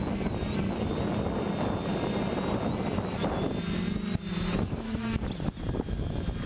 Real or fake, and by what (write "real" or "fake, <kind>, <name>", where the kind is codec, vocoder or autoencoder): real